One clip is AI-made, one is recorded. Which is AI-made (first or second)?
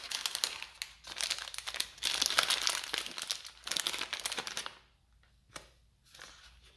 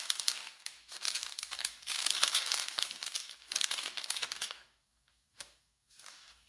second